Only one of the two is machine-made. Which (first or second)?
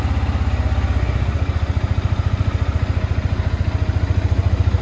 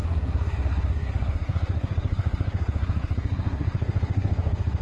second